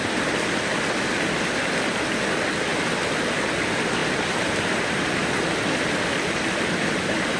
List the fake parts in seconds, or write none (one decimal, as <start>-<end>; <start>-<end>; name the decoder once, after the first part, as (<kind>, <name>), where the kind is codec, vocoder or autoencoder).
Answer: 4.0-5.4 (vocoder, BigVGAN v2)

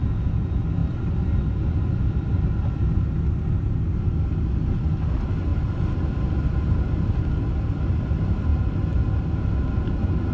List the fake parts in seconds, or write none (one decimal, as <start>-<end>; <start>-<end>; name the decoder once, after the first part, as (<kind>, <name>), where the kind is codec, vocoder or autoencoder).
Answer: 0.8-2.8 (vocoder, BigVGAN v2); 5.5-6.5

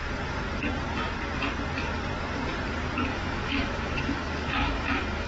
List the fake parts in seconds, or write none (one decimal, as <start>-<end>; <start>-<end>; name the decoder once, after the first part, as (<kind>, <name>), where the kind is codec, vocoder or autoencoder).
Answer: 3.1-5.3 (autoencoder, DAC-VAE)

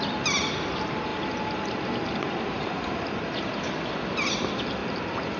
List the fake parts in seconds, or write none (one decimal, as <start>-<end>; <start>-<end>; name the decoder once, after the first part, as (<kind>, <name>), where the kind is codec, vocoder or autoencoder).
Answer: 1.1-4.3 (vocoder, BigVGAN v2)